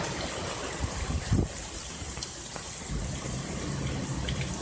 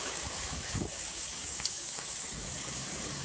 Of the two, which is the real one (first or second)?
first